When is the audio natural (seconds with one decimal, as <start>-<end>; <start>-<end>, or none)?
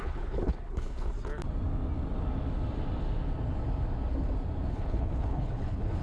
1.1-4.7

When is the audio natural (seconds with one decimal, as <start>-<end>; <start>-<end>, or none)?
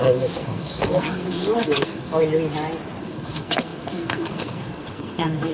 2.2-3.0